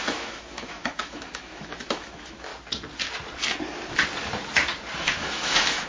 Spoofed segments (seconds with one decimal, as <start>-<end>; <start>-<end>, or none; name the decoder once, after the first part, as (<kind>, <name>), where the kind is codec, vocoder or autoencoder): 0.0-2.5 (autoencoder, DAC-VAE); 5.0-5.9